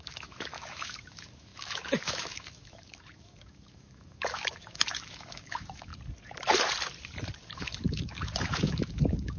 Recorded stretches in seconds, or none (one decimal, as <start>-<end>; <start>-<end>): 5.9-7.6